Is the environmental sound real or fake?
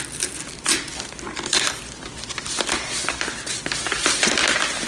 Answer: real